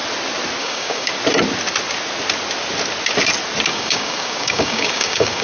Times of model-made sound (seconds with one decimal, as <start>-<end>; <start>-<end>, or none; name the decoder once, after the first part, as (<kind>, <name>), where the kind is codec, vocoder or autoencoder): 0.6-1.1 (codec, DAC); 3.7-5.4